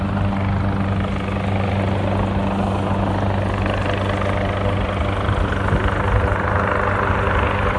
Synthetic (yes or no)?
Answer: no